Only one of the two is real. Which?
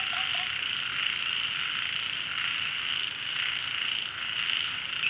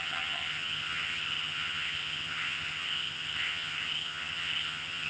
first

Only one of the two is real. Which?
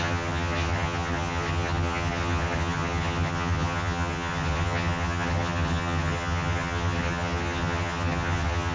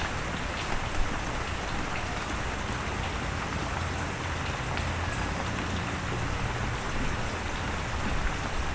second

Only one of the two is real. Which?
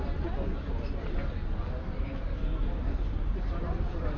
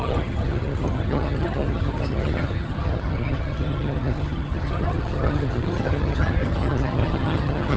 first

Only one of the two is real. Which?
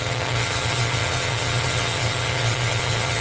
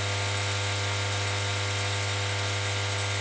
second